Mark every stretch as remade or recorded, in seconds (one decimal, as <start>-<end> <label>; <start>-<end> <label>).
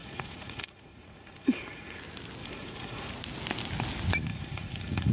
0.0-2.0 remade; 2.0-2.4 recorded; 2.4-3.1 remade; 3.1-4.3 recorded; 4.3-5.1 remade